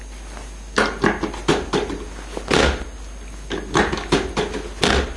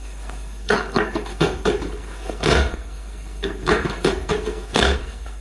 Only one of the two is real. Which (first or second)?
first